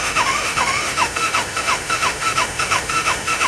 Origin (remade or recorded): remade